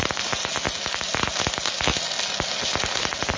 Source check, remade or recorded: recorded